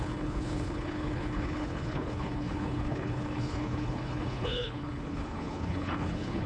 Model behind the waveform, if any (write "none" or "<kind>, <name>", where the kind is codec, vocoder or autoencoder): codec, HILCodec